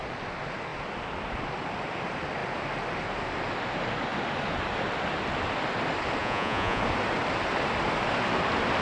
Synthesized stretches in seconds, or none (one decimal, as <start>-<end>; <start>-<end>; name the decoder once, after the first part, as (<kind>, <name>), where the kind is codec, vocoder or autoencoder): 6.2-6.8 (vocoder, Vocos)